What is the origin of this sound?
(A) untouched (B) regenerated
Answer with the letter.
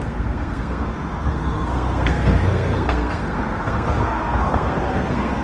B